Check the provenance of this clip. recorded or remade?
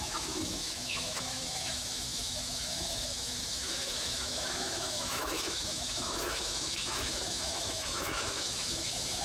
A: remade